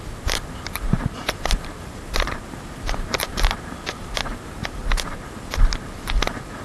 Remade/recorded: recorded